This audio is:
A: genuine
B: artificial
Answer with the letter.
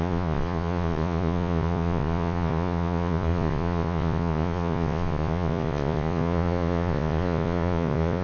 B